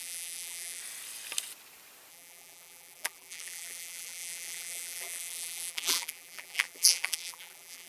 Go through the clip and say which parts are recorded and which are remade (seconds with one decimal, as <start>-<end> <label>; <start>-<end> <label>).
0.0-0.8 remade; 0.8-2.1 recorded; 2.1-7.9 remade